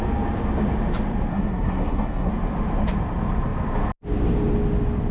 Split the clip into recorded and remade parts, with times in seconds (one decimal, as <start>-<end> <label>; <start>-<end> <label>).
0.0-1.3 recorded; 1.3-2.3 remade; 2.3-5.1 recorded

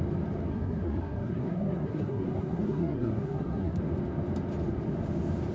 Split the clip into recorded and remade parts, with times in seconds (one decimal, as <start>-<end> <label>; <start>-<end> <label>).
0.0-0.5 recorded; 0.5-3.8 remade; 3.8-5.5 recorded